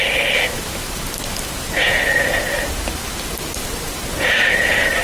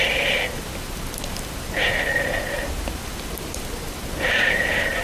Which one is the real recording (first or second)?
first